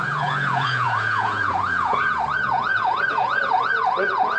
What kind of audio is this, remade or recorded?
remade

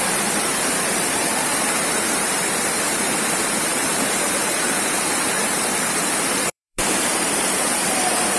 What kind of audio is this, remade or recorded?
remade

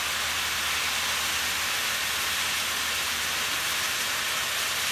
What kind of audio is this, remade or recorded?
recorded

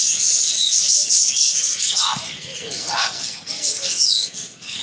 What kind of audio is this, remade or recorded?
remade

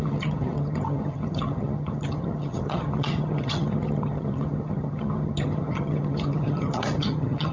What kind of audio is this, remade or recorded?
remade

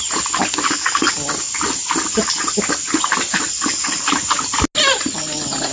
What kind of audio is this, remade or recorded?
recorded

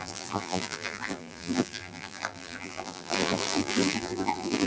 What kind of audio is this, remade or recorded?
remade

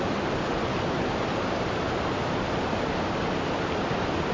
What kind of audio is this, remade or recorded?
recorded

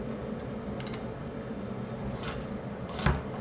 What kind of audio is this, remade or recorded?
remade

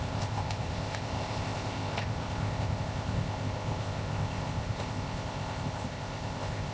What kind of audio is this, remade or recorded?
remade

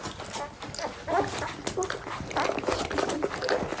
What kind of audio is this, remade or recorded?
recorded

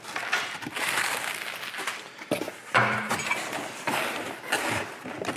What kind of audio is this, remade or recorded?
recorded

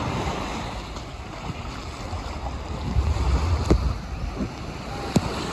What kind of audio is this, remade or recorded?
recorded